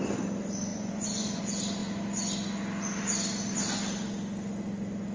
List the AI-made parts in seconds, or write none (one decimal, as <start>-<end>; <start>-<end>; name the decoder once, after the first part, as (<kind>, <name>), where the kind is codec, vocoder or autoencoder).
0.7-1.4 (vocoder, Vocos)